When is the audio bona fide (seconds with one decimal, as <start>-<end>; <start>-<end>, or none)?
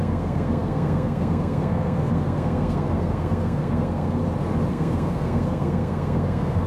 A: 4.2-4.7